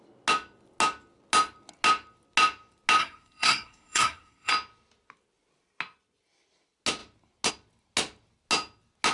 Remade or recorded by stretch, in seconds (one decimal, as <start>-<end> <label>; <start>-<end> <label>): 0.0-3.0 recorded; 3.0-4.5 remade; 4.5-9.1 recorded